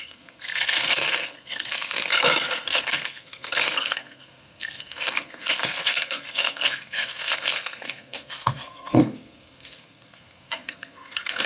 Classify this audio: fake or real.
fake